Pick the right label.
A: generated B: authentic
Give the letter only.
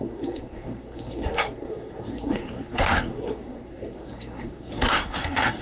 A